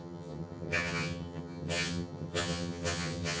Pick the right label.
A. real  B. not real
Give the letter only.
B